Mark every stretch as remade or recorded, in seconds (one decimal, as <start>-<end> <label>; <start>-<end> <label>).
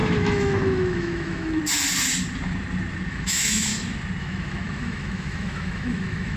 0.0-1.6 remade; 1.6-3.1 recorded; 3.1-3.7 remade; 3.7-4.2 recorded; 4.2-6.4 remade